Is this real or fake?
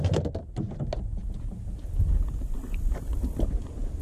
real